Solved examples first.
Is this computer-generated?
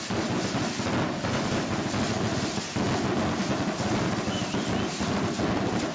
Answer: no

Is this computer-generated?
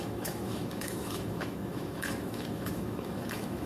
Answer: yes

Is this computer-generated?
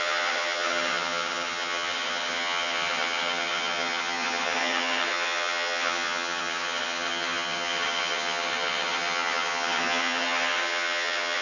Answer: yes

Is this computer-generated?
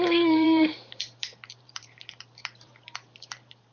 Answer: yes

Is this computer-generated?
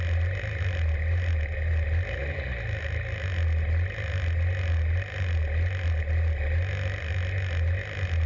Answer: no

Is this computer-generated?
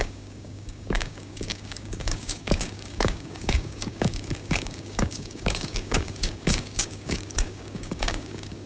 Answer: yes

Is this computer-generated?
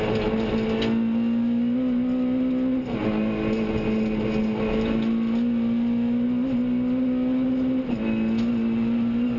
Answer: no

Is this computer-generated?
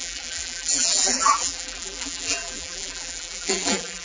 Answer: yes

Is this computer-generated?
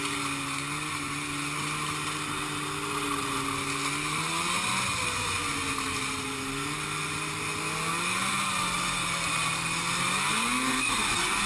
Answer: no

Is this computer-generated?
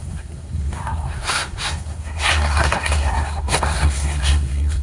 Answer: yes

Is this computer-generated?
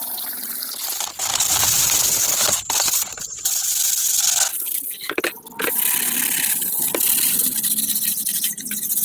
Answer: no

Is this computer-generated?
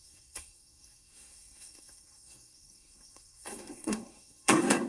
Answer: yes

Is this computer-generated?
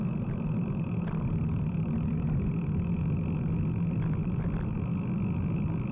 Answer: no